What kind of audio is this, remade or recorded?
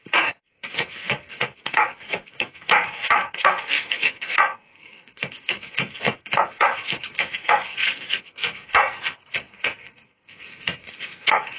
remade